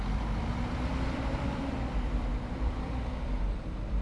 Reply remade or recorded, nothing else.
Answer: remade